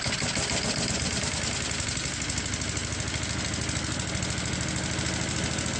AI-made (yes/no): no